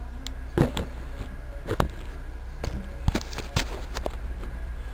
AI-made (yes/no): no